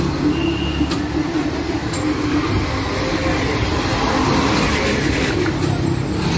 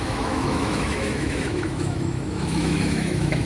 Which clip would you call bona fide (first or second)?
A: first